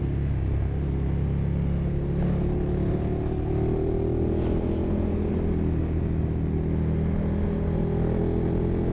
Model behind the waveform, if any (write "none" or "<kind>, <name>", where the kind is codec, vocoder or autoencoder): none